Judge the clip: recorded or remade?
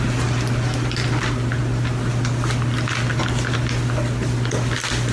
recorded